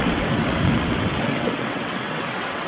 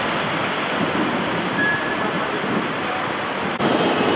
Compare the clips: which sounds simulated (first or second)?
first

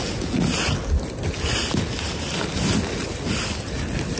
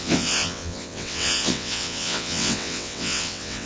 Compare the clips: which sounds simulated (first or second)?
second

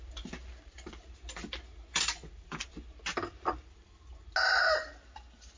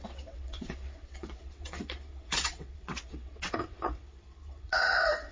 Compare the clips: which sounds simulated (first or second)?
second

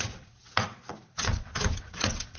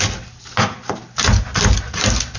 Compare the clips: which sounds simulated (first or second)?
first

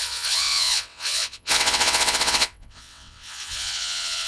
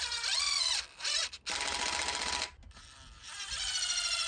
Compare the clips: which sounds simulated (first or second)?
first